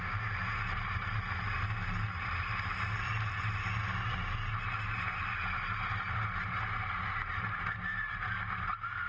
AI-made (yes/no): no